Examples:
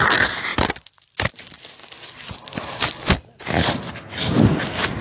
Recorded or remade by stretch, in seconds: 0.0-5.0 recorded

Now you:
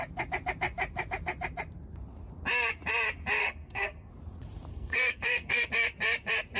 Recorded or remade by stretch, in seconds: 0.0-3.4 recorded; 3.4-4.1 remade; 4.1-4.7 recorded; 4.7-5.7 remade; 5.7-6.6 recorded